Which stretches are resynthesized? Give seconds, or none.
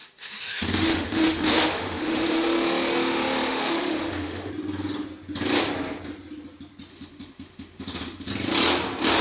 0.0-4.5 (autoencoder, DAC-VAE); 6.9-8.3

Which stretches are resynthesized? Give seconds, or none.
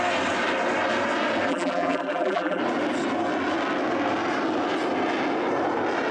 1.5-2.6 (vocoder, BigVGAN v2)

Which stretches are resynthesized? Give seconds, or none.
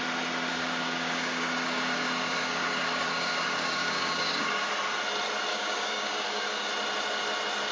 0.5-4.7 (codec, DAC); 5.5-6.7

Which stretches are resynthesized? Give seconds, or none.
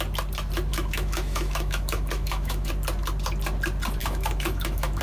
0.7-2.7 (autoencoder, DAC-VAE); 4.0-5.0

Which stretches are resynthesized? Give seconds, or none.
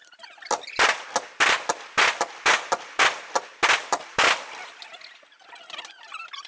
none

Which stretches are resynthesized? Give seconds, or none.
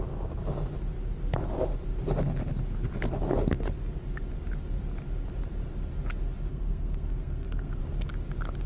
6.5-7.8 (codec, SNAC)